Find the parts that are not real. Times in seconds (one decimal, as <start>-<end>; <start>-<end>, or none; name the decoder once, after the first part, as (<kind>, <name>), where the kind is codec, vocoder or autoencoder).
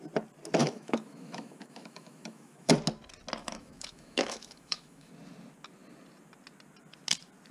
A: 0.6-2.7 (autoencoder, DAC-VAE); 3.4-5.1